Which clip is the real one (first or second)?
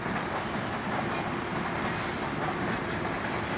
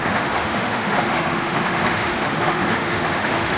first